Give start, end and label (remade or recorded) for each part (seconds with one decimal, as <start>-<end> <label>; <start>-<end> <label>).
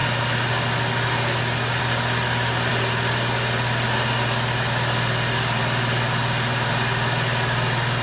0.0-8.0 recorded